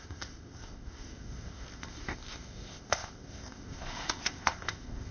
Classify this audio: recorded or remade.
remade